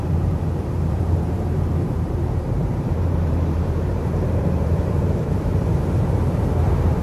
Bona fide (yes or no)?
no